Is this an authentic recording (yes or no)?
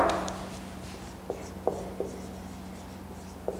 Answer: yes